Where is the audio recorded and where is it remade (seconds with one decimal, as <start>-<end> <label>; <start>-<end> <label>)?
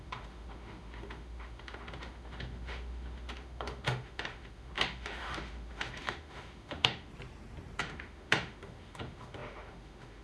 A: 0.0-7.1 remade; 7.1-7.8 recorded; 7.8-10.2 remade